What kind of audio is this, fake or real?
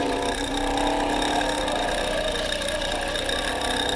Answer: real